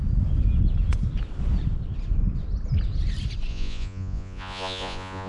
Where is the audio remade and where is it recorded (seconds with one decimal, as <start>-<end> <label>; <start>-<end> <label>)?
0.0-3.5 recorded; 3.5-5.3 remade